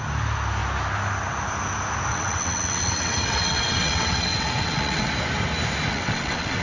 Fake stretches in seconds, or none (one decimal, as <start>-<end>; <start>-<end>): 2.1-5.1; 5.9-6.6